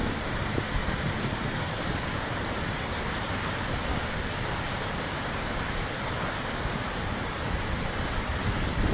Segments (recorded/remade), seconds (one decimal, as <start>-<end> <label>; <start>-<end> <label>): 0.0-8.9 recorded